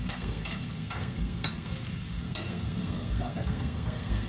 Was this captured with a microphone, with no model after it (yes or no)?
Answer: no